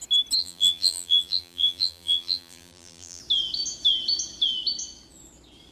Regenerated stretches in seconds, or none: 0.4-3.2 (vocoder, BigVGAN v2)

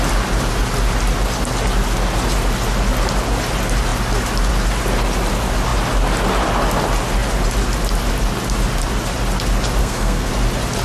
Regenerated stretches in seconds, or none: 9.8-10.3 (codec, SNAC)

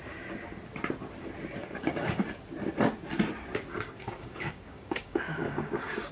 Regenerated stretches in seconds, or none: 1.6-2.2 (codec, DAC); 3.7-6.1

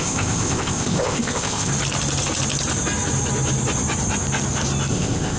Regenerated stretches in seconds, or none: 0.0-1.7 (codec, ZipCodec); 4.9-5.4